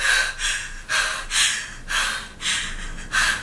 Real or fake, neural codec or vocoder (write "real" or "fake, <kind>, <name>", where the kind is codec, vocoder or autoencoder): real